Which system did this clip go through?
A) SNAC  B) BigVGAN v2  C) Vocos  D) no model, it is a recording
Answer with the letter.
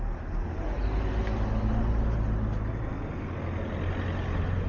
D